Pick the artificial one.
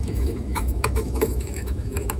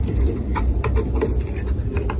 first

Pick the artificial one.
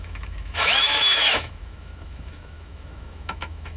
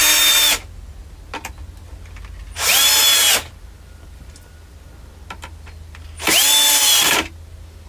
first